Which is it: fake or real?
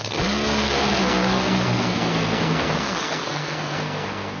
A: fake